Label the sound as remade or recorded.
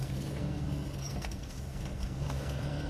remade